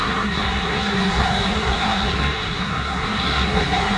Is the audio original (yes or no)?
no